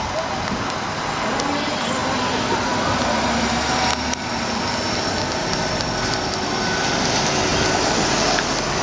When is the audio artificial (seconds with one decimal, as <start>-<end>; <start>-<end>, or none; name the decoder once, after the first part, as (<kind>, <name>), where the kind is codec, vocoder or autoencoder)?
none